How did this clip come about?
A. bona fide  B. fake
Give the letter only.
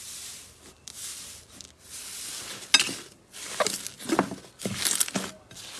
A